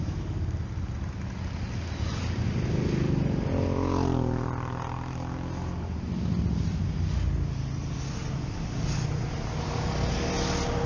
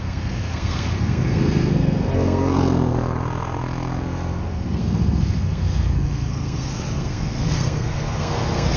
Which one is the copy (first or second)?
second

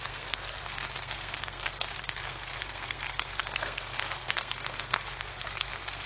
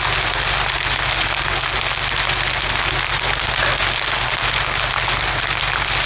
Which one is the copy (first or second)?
first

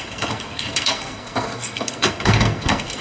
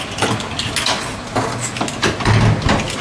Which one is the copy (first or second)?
first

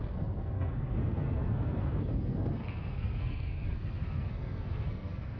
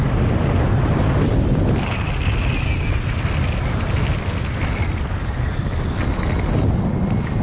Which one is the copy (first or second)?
first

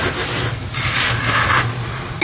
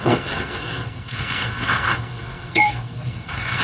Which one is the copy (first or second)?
second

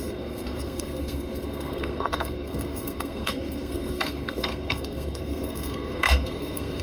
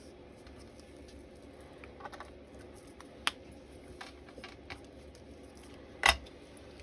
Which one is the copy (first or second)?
first